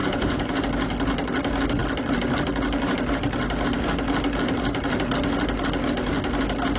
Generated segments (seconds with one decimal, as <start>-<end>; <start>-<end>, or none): 0.0-0.6